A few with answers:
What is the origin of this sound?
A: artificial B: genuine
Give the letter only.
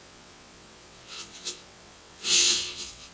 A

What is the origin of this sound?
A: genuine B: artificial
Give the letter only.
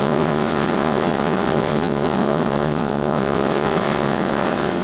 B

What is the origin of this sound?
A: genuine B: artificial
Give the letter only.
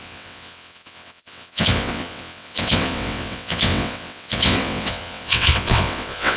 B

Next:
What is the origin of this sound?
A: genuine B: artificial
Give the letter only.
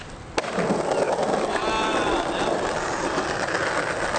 A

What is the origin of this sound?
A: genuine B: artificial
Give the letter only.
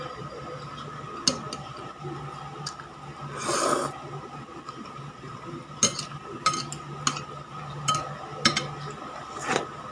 A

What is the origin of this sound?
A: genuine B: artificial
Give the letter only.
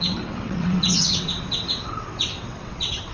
B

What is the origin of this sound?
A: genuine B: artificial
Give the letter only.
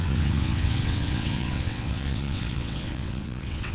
B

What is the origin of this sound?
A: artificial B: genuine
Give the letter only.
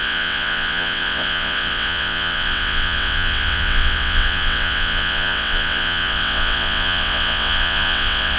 A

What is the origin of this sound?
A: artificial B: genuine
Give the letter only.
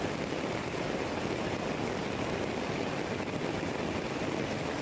B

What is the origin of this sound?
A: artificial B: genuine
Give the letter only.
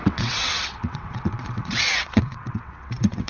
A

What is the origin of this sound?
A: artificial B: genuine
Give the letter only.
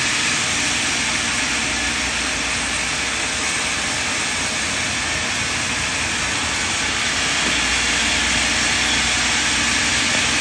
B